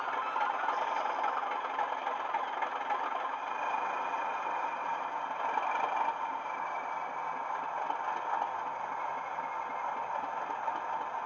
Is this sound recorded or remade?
recorded